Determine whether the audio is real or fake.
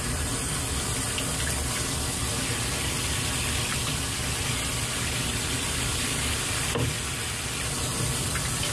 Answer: real